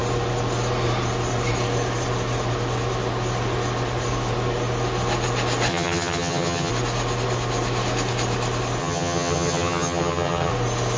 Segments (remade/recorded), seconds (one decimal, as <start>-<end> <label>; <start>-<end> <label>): 0.0-5.7 recorded; 5.7-6.7 remade; 6.7-8.8 recorded; 8.8-10.5 remade; 10.5-11.0 recorded